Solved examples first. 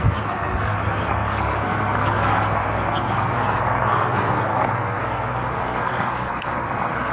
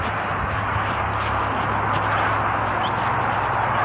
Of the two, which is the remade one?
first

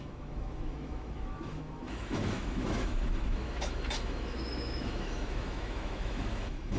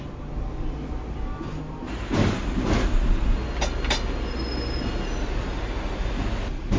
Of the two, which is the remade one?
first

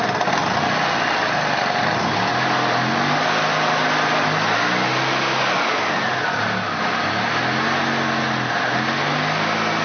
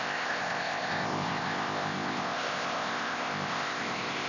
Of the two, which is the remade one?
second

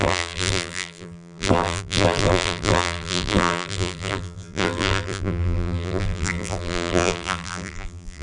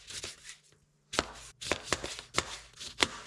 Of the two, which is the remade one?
first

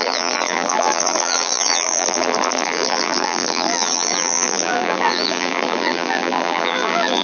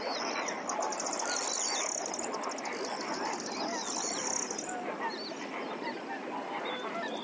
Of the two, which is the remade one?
first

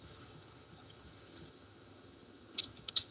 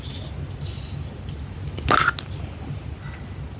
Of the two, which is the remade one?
first